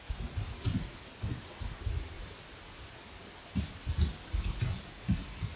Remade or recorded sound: recorded